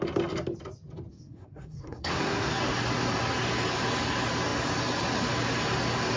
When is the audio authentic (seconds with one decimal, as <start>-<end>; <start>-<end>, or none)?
0.0-1.1; 2.5-6.2